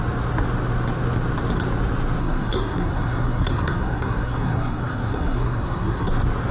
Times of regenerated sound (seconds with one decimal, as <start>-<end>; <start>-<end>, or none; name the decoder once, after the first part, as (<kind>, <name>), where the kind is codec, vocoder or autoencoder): 2.2-6.1 (codec, SNAC)